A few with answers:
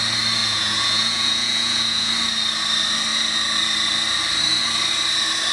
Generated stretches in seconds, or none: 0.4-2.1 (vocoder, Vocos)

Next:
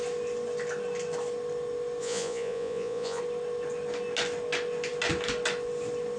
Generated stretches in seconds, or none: 2.0-3.2 (vocoder, Vocos)

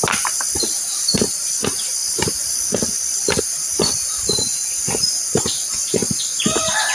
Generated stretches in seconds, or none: none

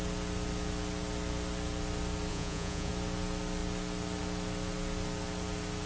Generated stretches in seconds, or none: 2.3-2.9 (vocoder, Vocos)

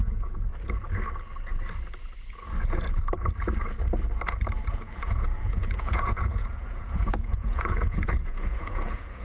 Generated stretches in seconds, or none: 0.0-0.5 (vocoder, Vocos); 4.7-9.2

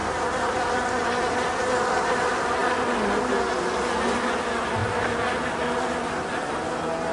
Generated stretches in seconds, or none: none

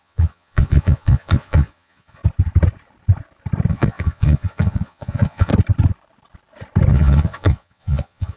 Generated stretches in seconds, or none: 0.0-2.2 (vocoder, Vocos); 3.7-5.5; 6.9-8.4